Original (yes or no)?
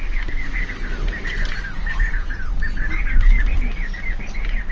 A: yes